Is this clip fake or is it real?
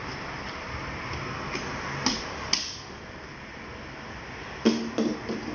real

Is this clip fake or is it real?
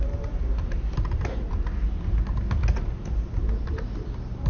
real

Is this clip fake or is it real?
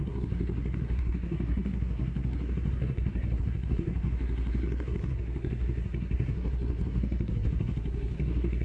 fake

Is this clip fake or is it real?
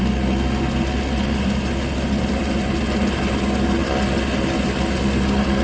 real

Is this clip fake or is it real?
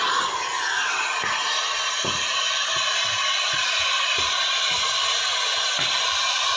real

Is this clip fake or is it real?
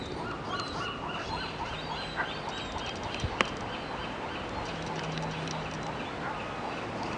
real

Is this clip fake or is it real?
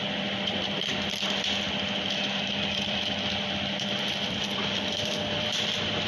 fake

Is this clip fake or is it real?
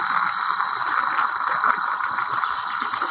real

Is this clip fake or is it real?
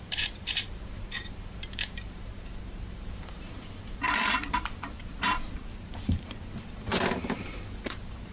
fake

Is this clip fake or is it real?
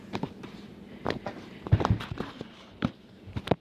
fake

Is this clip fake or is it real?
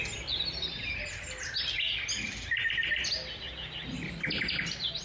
real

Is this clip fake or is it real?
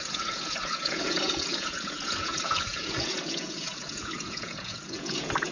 fake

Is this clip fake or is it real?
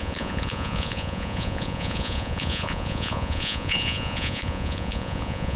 fake